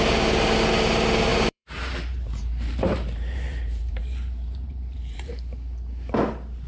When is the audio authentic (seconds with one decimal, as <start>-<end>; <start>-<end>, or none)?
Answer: 0.0-1.3; 5.3-6.7